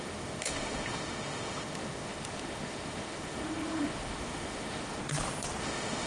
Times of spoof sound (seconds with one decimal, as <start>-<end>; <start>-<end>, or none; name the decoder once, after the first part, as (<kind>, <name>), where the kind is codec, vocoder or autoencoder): 0.0-5.0 (autoencoder, DAC-VAE); 5.6-6.1